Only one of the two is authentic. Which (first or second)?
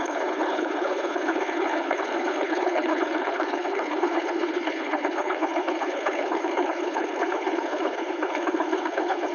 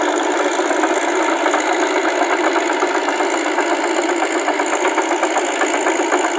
second